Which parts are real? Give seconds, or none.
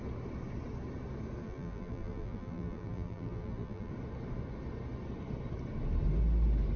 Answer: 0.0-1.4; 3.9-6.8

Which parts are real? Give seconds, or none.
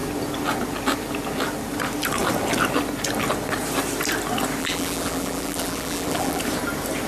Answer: 0.0-4.6; 6.4-7.1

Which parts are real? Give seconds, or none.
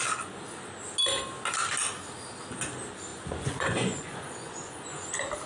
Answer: 0.0-3.1; 5.1-5.5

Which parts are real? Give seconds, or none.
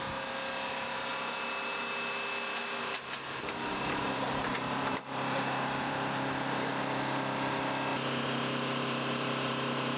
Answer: 0.0-2.8; 6.7-7.9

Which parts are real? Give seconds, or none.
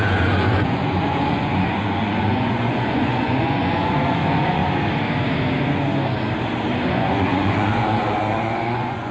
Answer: 4.6-6.9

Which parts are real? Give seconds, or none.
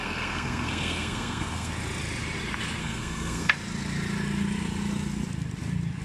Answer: 1.7-2.8; 3.5-6.0